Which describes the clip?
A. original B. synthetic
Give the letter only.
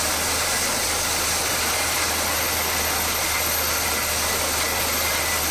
A